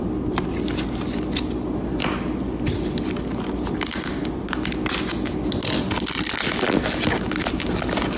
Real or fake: real